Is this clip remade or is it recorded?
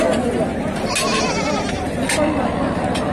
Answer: recorded